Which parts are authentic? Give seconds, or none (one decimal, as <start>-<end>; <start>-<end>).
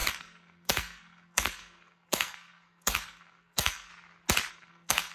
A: 3.9-4.5